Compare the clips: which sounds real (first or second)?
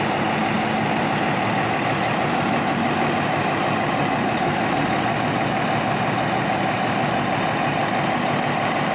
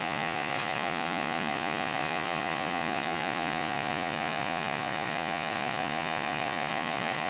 first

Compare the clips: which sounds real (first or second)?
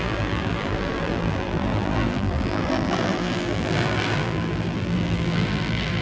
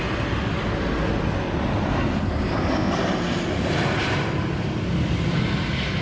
second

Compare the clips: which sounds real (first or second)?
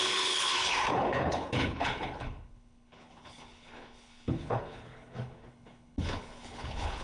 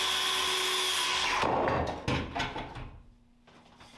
second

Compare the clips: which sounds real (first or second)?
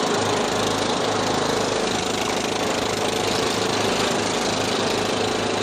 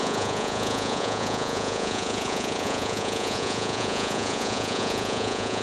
first